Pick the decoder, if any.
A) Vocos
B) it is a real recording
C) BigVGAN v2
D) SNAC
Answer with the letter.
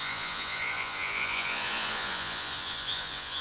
A